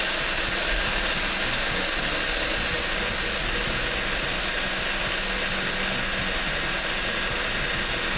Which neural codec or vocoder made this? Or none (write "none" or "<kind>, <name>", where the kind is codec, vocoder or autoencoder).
none